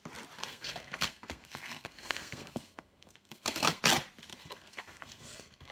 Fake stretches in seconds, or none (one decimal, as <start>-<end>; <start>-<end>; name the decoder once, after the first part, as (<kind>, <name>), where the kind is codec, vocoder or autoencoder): 0.4-3.8 (codec, SNAC); 4.3-5.7